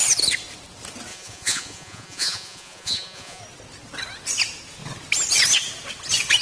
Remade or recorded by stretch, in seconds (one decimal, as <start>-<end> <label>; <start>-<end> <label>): 0.0-1.1 recorded; 1.1-3.4 remade; 3.4-6.4 recorded